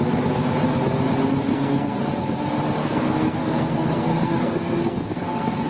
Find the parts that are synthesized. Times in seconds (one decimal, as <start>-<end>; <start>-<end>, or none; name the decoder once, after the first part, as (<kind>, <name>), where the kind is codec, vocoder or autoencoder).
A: 1.5-2.1 (codec, SNAC); 2.8-5.7